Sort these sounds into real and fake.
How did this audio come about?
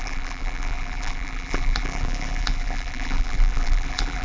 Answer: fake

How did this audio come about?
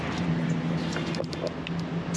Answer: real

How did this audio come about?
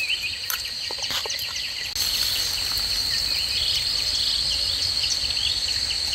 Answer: real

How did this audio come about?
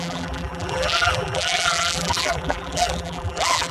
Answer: fake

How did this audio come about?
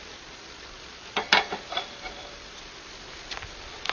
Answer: fake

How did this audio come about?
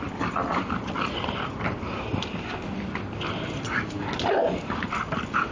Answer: fake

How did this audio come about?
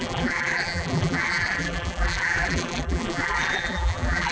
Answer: fake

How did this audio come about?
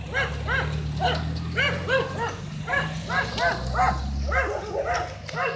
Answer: real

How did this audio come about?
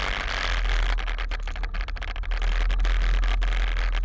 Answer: real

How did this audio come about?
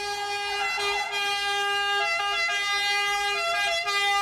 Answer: real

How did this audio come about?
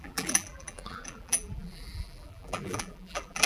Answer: fake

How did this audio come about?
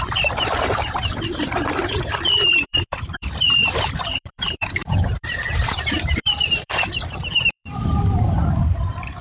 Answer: fake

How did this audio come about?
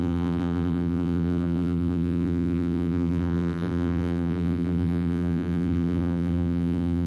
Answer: fake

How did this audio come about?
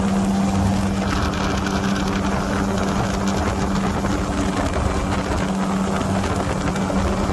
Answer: real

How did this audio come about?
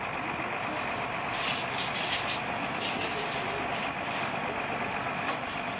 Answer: fake